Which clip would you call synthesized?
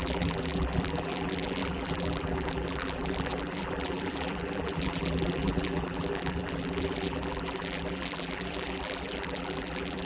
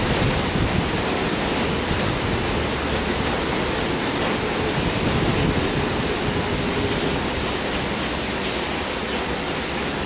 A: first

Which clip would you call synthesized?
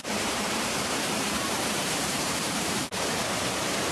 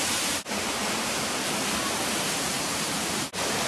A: first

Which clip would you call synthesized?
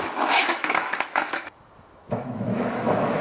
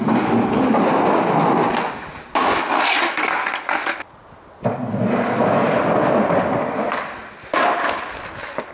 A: first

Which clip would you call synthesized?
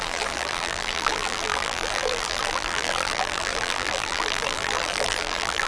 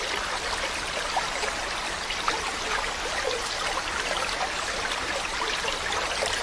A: first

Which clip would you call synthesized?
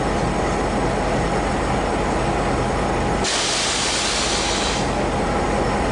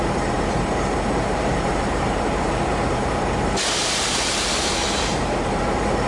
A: second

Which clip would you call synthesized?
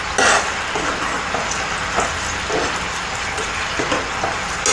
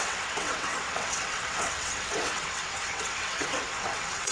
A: second